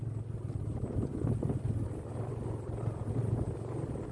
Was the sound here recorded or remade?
recorded